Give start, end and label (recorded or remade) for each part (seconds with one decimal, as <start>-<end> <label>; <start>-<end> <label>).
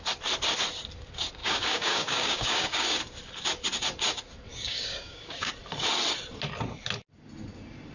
0.0-1.4 recorded; 1.4-3.0 remade; 3.0-4.5 recorded; 4.5-5.5 remade; 5.5-7.9 recorded